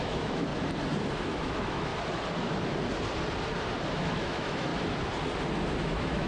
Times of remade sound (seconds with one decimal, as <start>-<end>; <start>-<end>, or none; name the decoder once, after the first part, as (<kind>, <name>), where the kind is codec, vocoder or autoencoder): 0.0-0.5 (autoencoder, DAC-VAE); 1.2-1.9; 3.9-4.7; 5.8-6.3

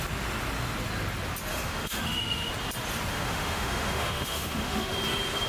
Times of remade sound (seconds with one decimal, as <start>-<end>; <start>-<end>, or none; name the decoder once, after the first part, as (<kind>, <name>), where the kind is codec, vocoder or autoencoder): 1.5-2.5 (autoencoder, DAC-VAE); 3.1-4.9

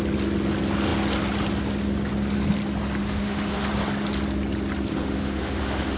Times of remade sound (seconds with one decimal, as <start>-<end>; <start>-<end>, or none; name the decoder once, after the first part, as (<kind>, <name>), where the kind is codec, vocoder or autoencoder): 3.0-3.7 (autoencoder, DAC-VAE); 4.9-6.0

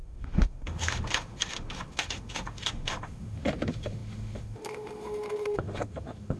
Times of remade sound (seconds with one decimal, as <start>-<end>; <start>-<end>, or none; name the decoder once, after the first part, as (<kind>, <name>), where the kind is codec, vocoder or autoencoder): 0.0-6.4 (autoencoder, DAC-VAE)

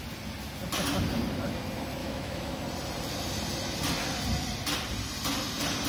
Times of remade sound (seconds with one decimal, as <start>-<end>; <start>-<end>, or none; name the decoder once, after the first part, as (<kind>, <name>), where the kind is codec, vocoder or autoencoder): 2.0-2.6 (autoencoder, DAC-VAE)